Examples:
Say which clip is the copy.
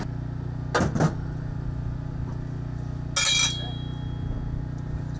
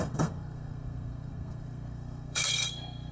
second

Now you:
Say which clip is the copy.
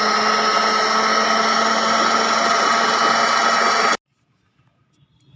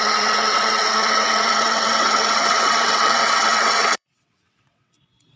second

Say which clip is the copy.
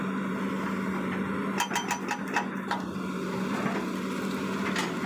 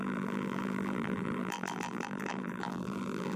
second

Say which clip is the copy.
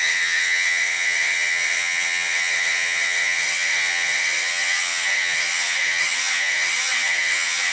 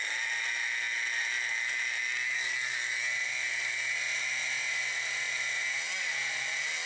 first